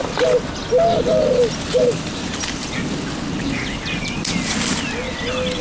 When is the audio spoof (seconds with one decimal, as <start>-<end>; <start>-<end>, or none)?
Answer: none